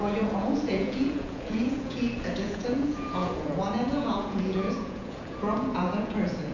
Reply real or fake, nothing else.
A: fake